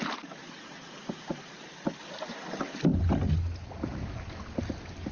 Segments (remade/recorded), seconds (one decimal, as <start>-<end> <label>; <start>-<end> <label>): 0.0-0.4 recorded; 0.4-1.5 remade; 1.5-5.1 recorded